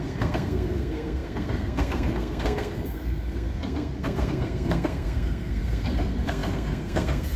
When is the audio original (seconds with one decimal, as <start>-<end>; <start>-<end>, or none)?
none